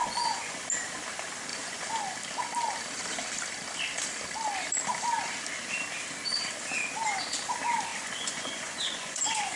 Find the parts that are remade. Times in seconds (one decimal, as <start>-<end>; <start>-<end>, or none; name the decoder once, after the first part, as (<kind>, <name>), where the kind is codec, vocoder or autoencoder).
0.0-0.6 (vocoder, Vocos); 1.5-2.0; 7.9-9.6